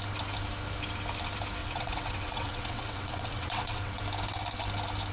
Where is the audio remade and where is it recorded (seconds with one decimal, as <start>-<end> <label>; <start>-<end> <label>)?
0.0-1.6 recorded; 1.6-4.0 remade; 4.0-5.1 recorded